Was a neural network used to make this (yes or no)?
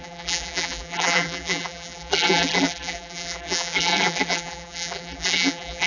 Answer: yes